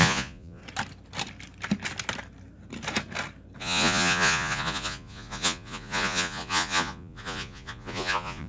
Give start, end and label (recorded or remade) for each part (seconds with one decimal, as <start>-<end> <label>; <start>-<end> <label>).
0.0-0.6 remade; 0.6-3.6 recorded; 3.6-8.5 remade